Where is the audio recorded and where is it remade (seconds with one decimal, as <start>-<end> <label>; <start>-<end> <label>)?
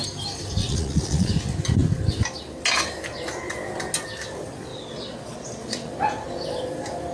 0.0-0.6 recorded; 0.6-1.3 remade; 1.3-4.7 recorded; 4.7-5.9 remade; 5.9-7.1 recorded